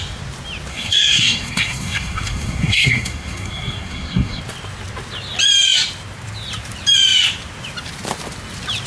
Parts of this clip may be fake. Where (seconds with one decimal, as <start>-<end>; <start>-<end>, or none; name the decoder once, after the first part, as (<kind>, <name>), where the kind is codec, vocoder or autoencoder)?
0.7-4.4 (codec, SNAC)